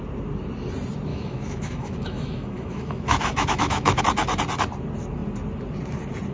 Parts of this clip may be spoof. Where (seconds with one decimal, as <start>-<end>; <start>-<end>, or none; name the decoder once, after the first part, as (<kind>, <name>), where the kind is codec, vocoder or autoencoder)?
1.1-4.0 (autoencoder, DAC-VAE)